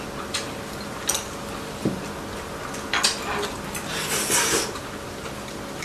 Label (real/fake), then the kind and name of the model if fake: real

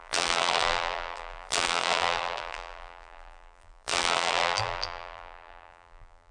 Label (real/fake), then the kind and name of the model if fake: fake, vocoder, BigVGAN v2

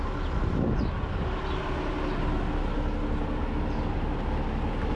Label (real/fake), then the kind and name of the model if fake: real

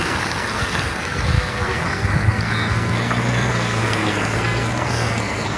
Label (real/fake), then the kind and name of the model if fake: fake, codec, SNAC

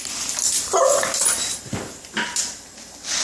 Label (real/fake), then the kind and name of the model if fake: real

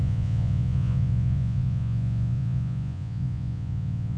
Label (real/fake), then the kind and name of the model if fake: fake, vocoder, Vocos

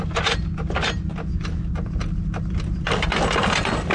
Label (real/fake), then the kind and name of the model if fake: real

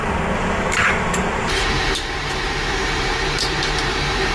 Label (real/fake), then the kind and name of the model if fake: fake, vocoder, BigVGAN v2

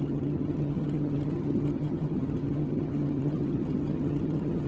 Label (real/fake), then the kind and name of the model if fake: fake, vocoder, HiFi-GAN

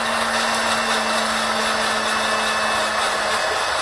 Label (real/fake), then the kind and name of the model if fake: real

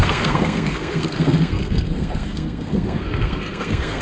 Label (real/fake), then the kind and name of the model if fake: fake, codec, SNAC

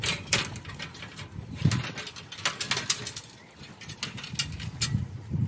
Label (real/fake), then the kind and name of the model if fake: real